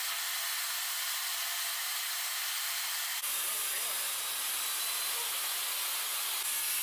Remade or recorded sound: recorded